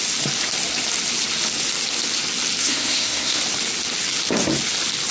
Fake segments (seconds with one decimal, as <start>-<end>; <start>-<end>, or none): 2.6-3.4